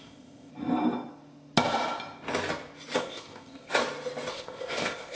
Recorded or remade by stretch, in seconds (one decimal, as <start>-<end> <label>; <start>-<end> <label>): 0.0-0.5 remade; 0.5-3.0 recorded; 3.0-3.7 remade; 3.7-4.3 recorded; 4.3-5.1 remade